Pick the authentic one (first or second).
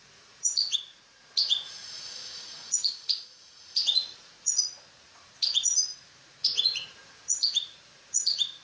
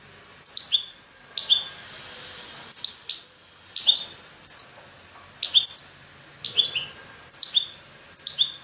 second